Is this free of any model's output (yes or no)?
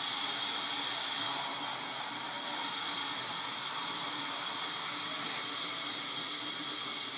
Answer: yes